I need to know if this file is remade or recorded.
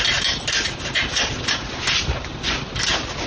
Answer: recorded